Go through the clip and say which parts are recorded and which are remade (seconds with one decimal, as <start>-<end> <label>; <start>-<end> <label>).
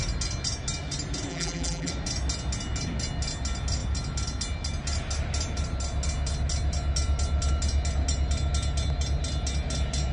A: 0.0-1.3 recorded; 1.3-1.9 remade; 1.9-10.1 recorded